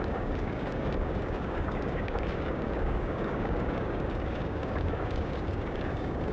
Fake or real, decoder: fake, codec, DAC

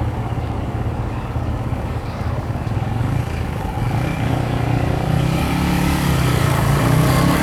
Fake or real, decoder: fake, codec, DAC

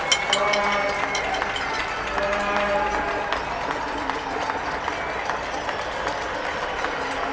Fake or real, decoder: real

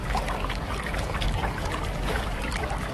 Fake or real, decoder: fake, codec, DAC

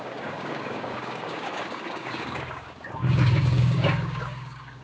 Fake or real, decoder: fake, codec, DAC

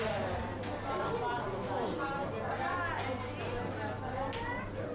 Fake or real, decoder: real